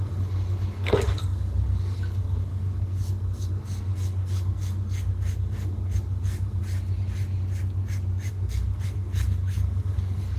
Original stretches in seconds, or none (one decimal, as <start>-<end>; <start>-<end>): 6.6-8.3